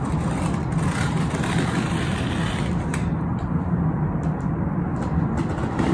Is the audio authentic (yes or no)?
yes